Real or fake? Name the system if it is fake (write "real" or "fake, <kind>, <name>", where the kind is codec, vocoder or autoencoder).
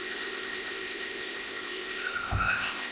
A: fake, codec, ZipCodec